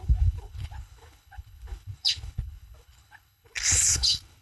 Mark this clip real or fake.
fake